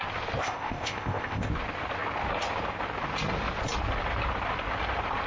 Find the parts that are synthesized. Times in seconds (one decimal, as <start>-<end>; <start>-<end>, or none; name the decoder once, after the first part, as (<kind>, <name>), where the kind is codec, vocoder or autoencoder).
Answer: 0.4-1.5 (codec, ZipCodec)